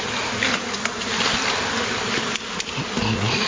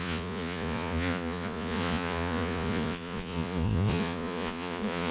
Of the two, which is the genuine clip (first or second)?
first